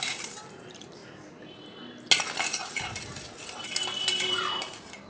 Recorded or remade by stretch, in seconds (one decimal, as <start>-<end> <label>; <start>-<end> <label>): 0.0-1.0 remade; 1.0-4.1 recorded; 4.1-5.1 remade